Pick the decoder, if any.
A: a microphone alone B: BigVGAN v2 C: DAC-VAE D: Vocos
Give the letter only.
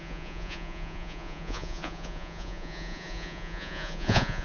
D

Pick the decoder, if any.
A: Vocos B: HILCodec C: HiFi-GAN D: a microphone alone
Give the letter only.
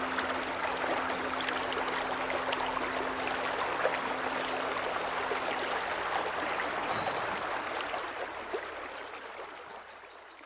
D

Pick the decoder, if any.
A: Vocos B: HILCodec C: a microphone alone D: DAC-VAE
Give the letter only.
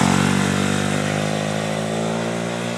C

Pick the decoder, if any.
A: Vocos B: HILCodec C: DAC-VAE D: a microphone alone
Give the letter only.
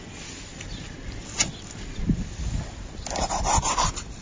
D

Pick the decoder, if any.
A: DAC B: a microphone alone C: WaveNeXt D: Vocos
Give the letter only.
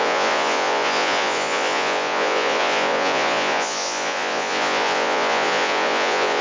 D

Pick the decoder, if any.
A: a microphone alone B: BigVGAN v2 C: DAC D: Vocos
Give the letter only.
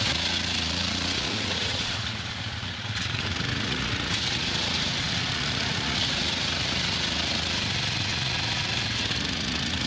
D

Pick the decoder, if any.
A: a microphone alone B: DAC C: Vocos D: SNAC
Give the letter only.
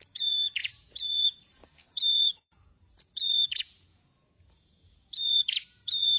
C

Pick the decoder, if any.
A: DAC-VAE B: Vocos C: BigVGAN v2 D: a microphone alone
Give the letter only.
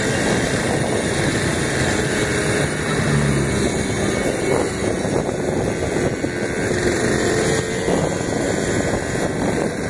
D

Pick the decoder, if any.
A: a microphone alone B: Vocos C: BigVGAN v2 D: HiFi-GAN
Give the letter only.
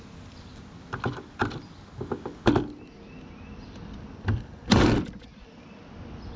A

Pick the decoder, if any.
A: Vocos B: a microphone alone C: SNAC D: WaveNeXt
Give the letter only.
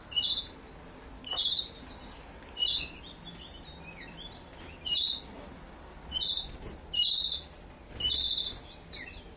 B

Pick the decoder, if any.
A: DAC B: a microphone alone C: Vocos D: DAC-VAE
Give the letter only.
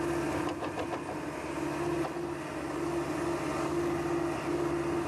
B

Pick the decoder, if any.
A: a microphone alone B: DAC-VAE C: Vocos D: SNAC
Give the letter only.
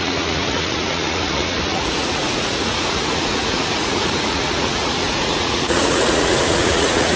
C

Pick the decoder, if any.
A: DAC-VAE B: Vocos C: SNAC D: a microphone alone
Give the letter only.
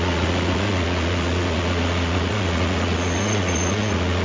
B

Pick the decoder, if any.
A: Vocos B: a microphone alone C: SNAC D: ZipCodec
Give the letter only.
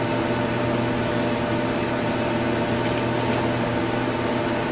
B